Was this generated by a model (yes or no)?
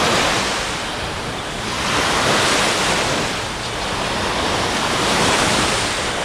no